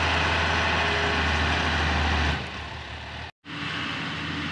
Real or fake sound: real